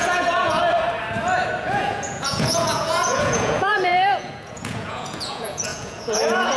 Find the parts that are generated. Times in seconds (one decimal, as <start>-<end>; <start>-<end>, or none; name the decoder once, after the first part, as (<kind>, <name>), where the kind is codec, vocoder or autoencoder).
0.0-0.6 (vocoder, Vocos); 1.6-6.6